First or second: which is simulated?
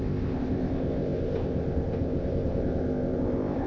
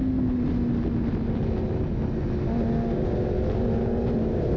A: first